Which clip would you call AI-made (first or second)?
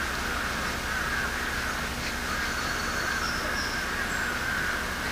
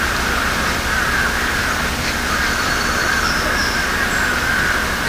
second